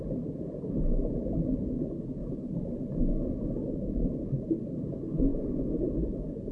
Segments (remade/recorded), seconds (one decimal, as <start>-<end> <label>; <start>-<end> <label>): 0.0-2.2 recorded; 2.2-3.0 remade; 3.0-3.6 recorded; 3.6-4.6 remade; 4.6-6.5 recorded